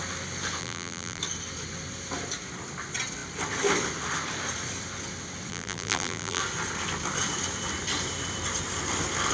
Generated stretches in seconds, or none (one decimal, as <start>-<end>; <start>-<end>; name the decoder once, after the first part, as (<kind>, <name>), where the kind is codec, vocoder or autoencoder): 0.6-1.2 (vocoder, BigVGAN v2); 5.5-6.4